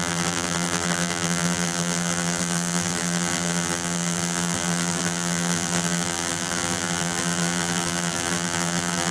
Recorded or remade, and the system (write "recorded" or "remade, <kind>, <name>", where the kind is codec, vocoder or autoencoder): remade, vocoder, BigVGAN v2